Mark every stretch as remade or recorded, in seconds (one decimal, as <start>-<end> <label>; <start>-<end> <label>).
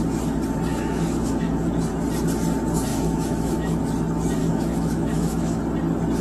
0.0-0.7 recorded; 0.7-1.7 remade; 1.7-2.9 recorded; 2.9-3.8 remade; 3.8-4.4 recorded; 4.4-5.6 remade; 5.6-6.2 recorded